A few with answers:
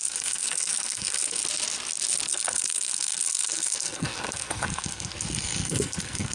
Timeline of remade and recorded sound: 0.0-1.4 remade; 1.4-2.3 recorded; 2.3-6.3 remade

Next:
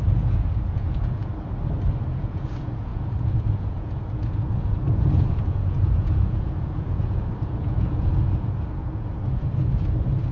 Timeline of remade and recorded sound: 0.0-1.3 remade; 1.3-2.1 recorded; 2.1-10.3 remade

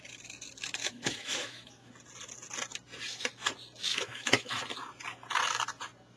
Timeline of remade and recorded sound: 0.0-0.8 recorded; 0.8-1.9 remade; 1.9-3.9 recorded; 3.9-4.6 remade; 4.6-6.2 recorded

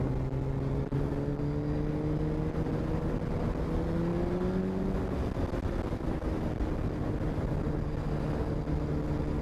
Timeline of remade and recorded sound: 0.0-9.4 recorded